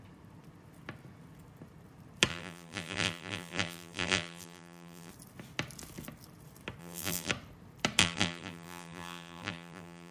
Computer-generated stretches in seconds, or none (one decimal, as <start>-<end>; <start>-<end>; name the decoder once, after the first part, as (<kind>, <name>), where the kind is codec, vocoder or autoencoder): 2.3-5.1 (vocoder, BigVGAN v2); 6.8-7.3; 8.0-10.1